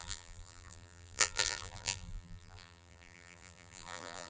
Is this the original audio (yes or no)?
no